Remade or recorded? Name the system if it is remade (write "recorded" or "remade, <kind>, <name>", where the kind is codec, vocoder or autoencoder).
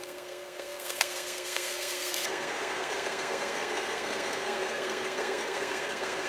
remade, codec, SNAC